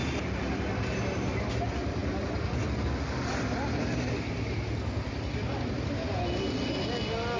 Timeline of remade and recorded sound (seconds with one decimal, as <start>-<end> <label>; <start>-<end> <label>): 0.0-7.4 recorded